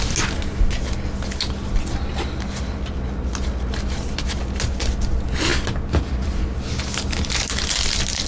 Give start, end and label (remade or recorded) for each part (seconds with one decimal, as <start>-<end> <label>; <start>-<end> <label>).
0.0-8.3 recorded